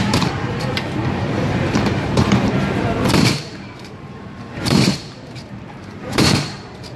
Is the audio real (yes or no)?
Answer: no